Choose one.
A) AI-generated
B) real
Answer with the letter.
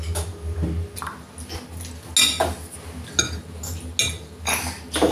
B